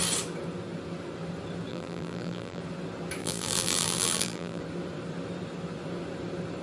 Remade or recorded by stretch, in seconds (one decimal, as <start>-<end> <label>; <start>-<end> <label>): 0.0-1.7 recorded; 1.7-2.6 remade; 2.6-3.2 recorded; 3.2-4.6 remade; 4.6-6.6 recorded